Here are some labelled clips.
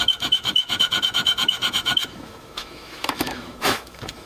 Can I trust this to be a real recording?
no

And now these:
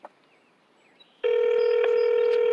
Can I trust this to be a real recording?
yes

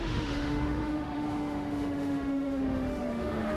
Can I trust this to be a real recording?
no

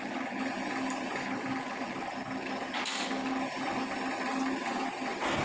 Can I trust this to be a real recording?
yes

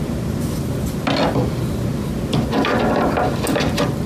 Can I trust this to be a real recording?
yes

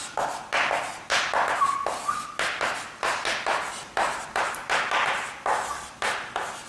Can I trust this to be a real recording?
yes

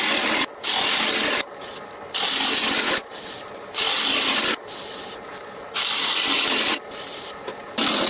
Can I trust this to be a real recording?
yes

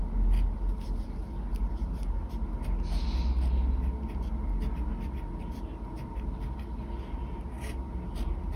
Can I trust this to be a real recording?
yes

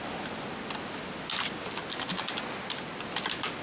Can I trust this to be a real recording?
yes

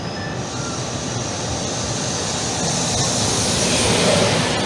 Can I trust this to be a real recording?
yes